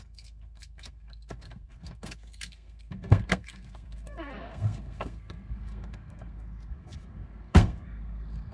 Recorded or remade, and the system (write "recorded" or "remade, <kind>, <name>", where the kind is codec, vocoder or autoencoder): remade, codec, SNAC